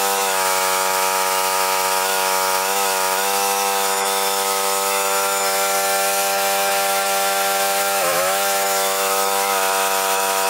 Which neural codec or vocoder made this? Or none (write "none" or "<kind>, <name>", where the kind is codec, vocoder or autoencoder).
autoencoder, DAC-VAE